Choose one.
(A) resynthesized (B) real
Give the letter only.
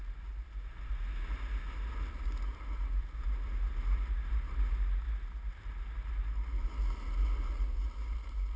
B